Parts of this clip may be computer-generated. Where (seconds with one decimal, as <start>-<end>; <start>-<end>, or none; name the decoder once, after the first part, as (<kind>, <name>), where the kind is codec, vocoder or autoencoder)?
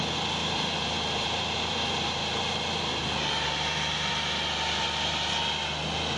0.4-4.1 (vocoder, BigVGAN v2)